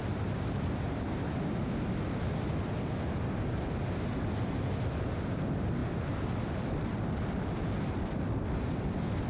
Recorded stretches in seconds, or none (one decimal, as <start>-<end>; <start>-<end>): 0.0-9.3